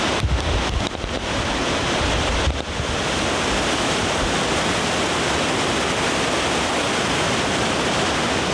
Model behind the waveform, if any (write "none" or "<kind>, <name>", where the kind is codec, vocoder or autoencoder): none